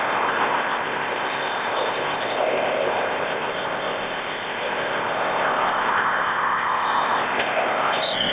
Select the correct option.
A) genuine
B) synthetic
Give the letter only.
B